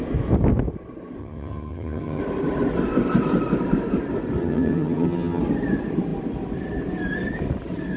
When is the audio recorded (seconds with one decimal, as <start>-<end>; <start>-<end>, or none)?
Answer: 0.0-1.2; 2.2-4.4; 5.4-8.0